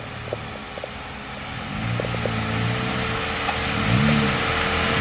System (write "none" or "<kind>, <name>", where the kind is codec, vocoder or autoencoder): none